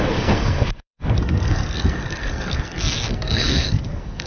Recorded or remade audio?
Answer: remade